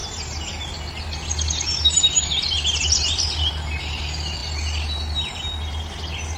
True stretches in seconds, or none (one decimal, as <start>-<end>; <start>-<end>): 0.0-6.4